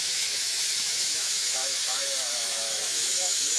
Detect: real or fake fake